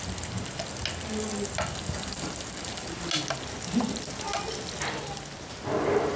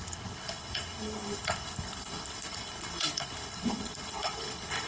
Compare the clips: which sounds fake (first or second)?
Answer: second